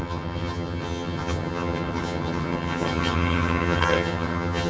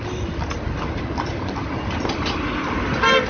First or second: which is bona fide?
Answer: second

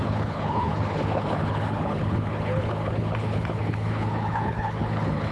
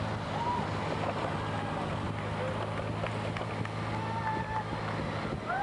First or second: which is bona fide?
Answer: second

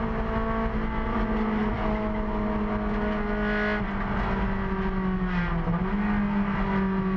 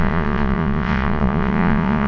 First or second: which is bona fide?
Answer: first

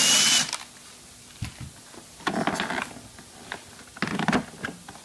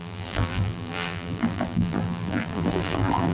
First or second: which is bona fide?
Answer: first